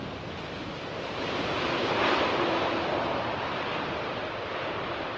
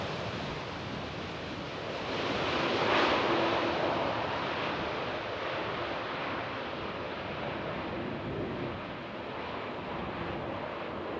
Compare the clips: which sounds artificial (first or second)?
first